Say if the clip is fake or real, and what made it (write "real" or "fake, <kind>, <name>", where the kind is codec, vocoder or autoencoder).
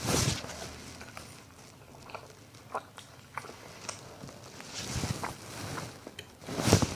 real